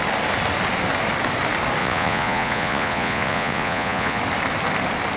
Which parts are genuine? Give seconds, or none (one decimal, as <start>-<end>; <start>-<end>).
0.0-1.8; 4.2-5.2